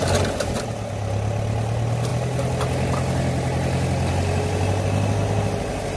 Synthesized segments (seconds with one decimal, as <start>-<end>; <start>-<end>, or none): none

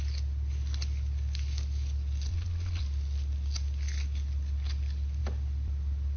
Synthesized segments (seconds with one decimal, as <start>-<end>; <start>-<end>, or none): 2.3-2.8

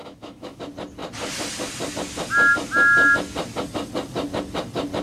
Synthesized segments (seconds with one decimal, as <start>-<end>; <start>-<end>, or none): 0.0-0.6

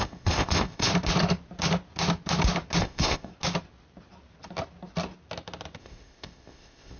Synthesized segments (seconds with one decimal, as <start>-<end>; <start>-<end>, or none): 0.0-0.9; 2.8-3.3; 5.8-7.0

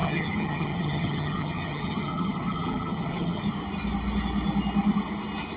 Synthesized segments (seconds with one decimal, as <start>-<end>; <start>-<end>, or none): 0.0-3.4

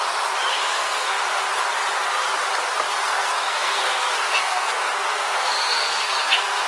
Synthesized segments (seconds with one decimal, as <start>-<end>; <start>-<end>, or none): 0.5-1.2; 2.9-6.7

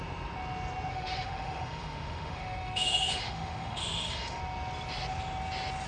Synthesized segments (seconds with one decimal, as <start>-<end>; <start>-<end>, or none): 0.9-4.4